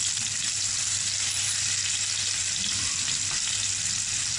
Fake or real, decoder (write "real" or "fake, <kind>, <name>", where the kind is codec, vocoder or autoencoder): real